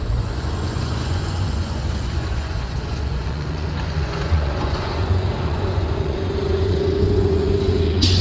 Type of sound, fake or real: fake